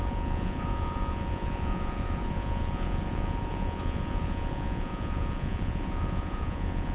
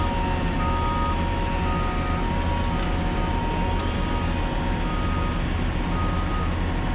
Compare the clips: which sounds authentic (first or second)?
second